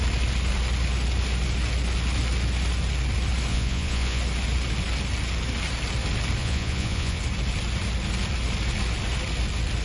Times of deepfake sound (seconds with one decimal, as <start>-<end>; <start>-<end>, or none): 3.5-4.2; 6.4-7.2